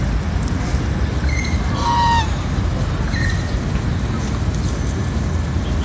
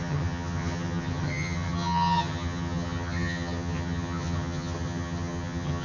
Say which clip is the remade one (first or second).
second